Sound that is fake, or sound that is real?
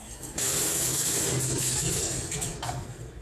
fake